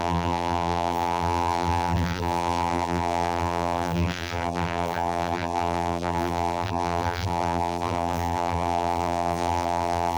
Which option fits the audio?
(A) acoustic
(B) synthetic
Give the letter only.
B